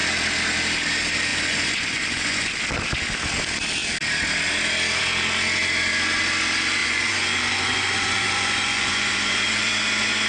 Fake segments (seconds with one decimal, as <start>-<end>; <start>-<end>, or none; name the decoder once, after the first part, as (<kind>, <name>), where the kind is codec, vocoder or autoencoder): 1.3-2.6 (vocoder, Vocos); 6.8-9.7